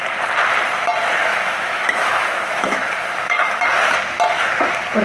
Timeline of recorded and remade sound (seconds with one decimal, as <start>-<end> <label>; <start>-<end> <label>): 0.0-1.3 recorded; 1.3-3.6 remade; 3.6-5.0 recorded